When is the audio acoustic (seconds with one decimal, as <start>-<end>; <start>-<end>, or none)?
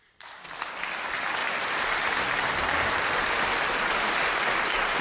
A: 0.0-1.4; 2.2-5.0